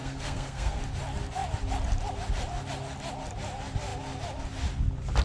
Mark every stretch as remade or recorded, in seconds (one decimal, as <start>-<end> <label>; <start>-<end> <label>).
0.0-0.8 remade; 0.8-5.2 recorded